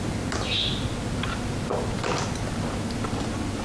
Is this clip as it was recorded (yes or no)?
yes